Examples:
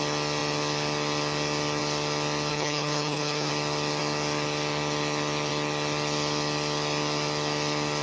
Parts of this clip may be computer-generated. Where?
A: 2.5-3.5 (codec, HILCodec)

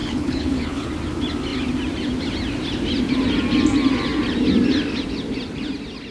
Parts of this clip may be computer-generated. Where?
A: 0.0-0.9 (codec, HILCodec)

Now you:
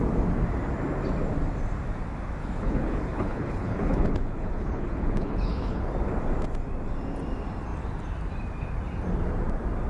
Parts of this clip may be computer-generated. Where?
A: 2.4-5.8 (codec, HILCodec)

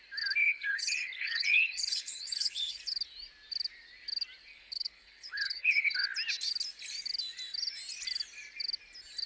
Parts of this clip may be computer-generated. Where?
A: 0.4-2.8 (codec, HILCodec); 4.5-5.9